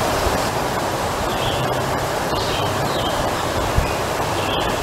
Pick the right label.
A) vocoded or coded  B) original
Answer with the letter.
A